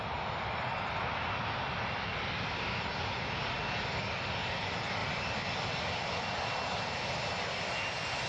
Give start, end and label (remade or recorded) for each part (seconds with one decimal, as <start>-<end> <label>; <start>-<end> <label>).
0.0-5.0 recorded; 5.0-6.2 remade; 6.2-8.3 recorded